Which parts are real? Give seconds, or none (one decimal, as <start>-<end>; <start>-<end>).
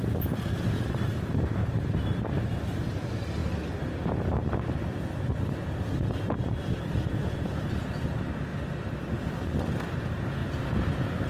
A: 0.0-1.6; 2.2-10.4; 10.9-11.3